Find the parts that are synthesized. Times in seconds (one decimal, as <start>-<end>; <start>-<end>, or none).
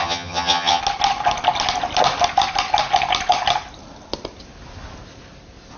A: 0.0-0.8